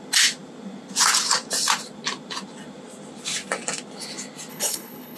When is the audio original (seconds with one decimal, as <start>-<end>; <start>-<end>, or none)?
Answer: 0.0-4.5